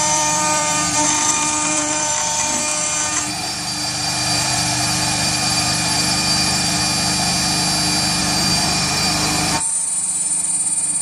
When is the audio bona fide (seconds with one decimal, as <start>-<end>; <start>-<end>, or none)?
2.6-3.1; 6.8-8.2; 10.5-11.0